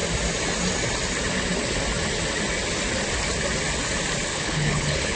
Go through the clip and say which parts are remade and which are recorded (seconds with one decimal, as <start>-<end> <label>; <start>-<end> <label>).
0.0-4.3 recorded; 4.3-5.2 remade